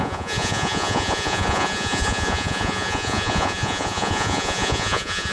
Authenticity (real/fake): fake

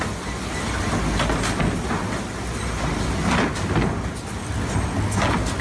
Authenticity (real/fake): real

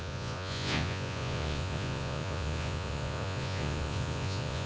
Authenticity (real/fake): fake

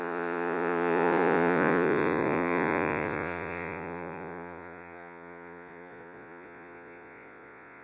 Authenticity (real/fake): fake